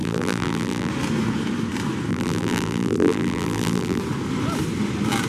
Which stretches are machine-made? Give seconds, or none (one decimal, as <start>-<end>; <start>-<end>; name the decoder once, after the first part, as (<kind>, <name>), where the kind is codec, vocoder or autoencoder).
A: 0.0-0.9 (vocoder, BigVGAN v2); 2.1-4.0

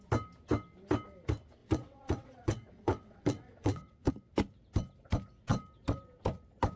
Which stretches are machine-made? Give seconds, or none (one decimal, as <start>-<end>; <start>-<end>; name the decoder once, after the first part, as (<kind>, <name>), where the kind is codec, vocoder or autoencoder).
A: 1.6-4.1 (vocoder, WaveNeXt)

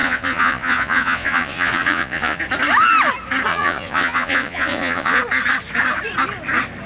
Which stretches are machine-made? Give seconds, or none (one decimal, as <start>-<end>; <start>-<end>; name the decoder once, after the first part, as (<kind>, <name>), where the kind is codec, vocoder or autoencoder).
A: 0.0-2.4 (vocoder, Vocos); 3.5-5.2